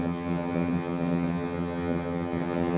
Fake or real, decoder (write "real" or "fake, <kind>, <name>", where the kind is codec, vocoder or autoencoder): fake, vocoder, HiFi-GAN